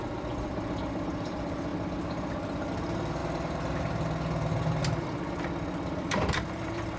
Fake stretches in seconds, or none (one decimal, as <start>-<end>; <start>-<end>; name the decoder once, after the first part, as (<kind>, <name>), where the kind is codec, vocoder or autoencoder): 0.0-3.2 (vocoder, BigVGAN v2); 4.8-7.0